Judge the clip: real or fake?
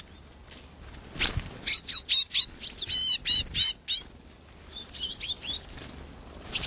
real